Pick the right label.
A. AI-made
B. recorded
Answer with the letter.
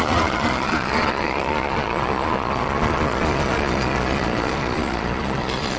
A